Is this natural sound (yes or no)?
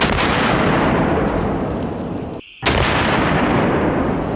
yes